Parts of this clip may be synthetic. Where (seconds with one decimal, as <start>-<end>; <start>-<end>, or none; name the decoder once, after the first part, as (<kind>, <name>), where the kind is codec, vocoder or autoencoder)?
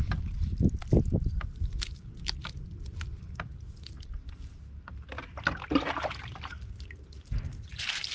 none